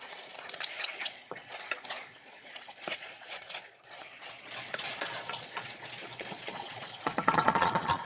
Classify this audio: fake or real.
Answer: fake